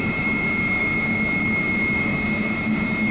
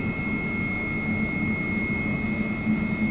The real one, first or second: second